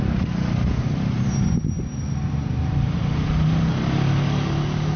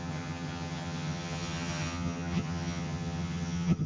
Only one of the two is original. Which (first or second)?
first